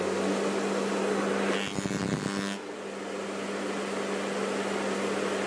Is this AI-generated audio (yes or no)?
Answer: no